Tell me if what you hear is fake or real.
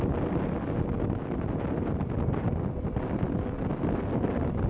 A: real